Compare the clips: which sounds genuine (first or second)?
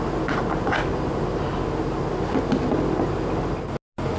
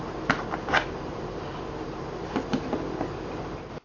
first